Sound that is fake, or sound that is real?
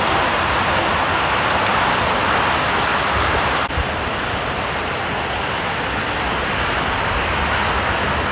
real